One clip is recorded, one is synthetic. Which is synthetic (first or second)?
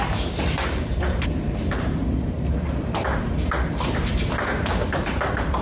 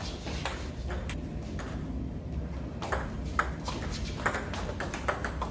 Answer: first